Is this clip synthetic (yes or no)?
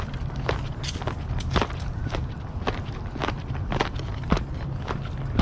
yes